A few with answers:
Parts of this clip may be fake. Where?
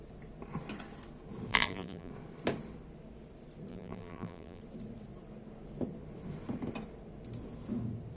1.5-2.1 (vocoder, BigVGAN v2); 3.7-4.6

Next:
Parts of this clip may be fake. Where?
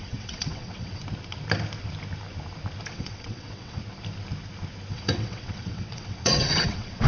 0.0-1.0 (vocoder, WaveNeXt); 2.9-3.8; 4.9-7.1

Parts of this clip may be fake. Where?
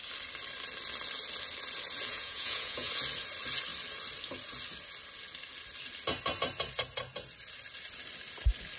2.1-2.9 (vocoder, Vocos)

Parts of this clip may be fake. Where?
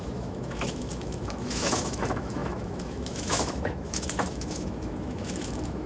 0.0-5.9 (autoencoder, DAC-VAE)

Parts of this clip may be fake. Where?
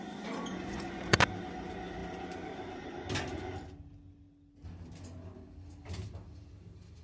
0.5-1.2 (vocoder, Vocos)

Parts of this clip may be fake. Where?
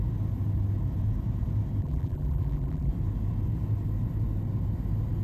1.8-2.9 (vocoder, BigVGAN v2)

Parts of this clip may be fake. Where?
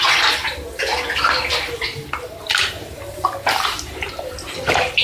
1.9-5.0 (vocoder, BigVGAN v2)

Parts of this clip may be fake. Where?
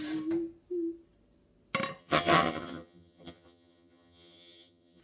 2.0-5.0 (vocoder, HiFi-GAN)